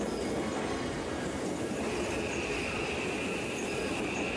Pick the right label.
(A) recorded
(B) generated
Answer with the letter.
A